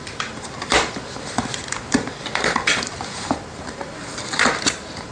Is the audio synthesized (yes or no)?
yes